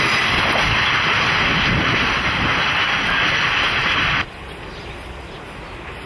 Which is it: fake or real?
real